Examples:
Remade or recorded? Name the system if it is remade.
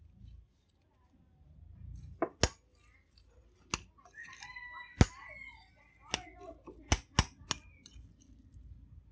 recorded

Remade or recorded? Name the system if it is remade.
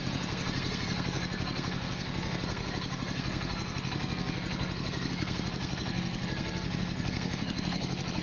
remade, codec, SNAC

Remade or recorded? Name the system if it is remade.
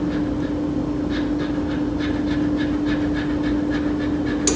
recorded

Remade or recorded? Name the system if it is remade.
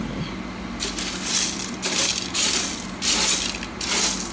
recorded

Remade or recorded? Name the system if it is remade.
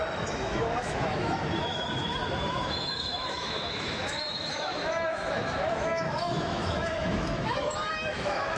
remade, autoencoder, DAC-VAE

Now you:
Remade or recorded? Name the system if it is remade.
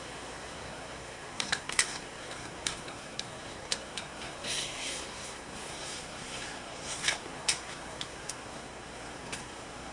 remade, codec, SNAC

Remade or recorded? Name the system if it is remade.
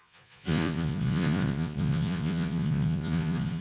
remade, vocoder, Vocos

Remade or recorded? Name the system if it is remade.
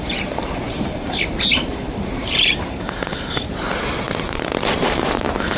remade, vocoder, BigVGAN v2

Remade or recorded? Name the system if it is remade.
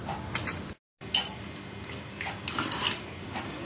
recorded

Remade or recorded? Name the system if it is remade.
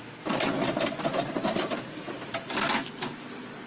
recorded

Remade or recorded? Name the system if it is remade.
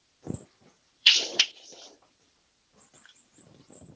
remade, vocoder, BigVGAN v2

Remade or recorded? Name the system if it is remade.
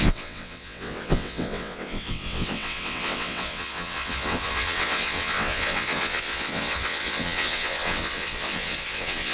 remade, vocoder, WaveNeXt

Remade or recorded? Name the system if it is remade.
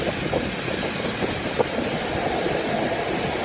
recorded